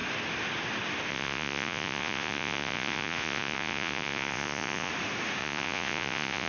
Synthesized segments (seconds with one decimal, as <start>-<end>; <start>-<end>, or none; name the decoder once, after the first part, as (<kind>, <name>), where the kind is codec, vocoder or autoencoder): 1.1-4.9 (vocoder, Vocos); 5.4-6.5